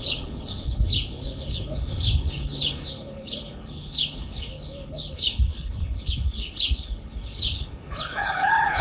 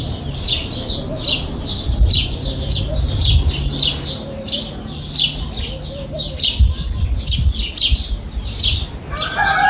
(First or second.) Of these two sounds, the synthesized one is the first